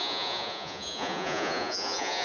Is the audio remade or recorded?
remade